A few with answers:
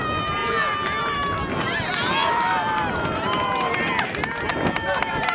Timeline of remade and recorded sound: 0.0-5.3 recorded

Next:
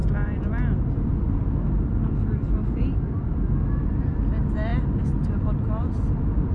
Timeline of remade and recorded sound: 0.0-4.7 remade; 4.7-5.4 recorded; 5.4-6.5 remade

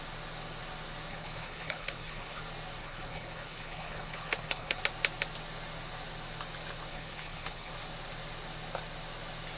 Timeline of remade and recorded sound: 0.0-1.1 recorded; 1.1-2.4 remade; 2.4-2.8 recorded; 2.8-4.8 remade; 4.8-6.9 recorded; 6.9-7.7 remade; 7.7-9.6 recorded

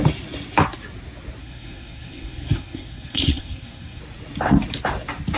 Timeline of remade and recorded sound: 0.0-1.4 recorded; 1.4-4.0 remade; 4.0-5.4 recorded